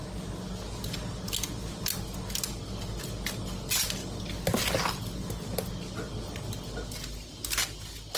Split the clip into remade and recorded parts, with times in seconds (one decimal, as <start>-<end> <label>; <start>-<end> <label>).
0.0-8.2 recorded